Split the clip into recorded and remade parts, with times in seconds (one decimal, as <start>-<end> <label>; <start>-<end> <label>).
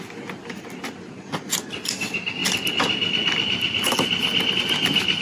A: 0.0-5.2 recorded